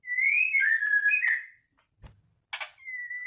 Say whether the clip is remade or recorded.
recorded